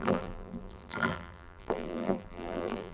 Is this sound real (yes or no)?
no